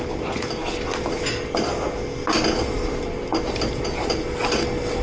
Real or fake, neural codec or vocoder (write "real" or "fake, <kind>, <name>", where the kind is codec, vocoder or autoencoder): real